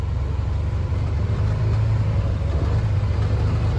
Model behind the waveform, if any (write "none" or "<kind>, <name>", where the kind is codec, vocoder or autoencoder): vocoder, BigVGAN v2